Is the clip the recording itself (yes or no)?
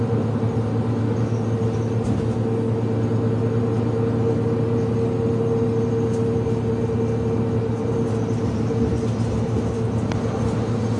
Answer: yes